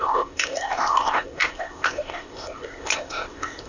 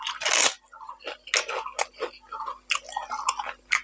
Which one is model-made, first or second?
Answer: first